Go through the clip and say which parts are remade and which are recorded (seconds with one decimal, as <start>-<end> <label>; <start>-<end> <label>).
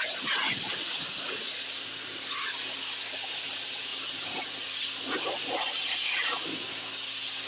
0.0-7.5 recorded